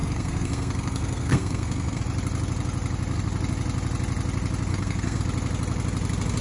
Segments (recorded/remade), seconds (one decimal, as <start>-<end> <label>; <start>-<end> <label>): 0.0-2.0 remade; 2.0-4.7 recorded; 4.7-5.2 remade; 5.2-6.4 recorded